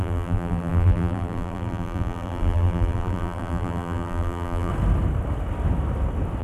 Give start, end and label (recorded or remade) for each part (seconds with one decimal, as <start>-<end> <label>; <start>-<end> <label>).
0.0-4.7 remade; 4.7-6.4 recorded